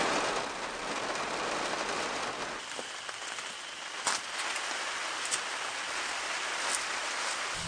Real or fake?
real